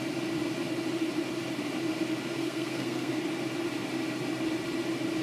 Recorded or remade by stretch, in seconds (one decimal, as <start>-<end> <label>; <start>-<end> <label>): 0.0-2.4 recorded; 2.4-3.2 remade; 3.2-5.2 recorded